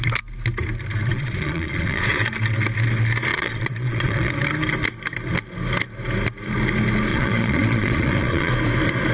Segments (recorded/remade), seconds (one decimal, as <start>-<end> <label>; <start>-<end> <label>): 0.0-1.1 recorded; 1.1-2.3 remade; 2.3-3.3 recorded; 3.3-4.3 remade; 4.3-7.1 recorded; 7.1-8.5 remade; 8.5-9.1 recorded